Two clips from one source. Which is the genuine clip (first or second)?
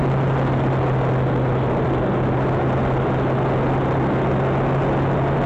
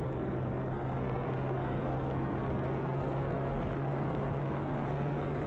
first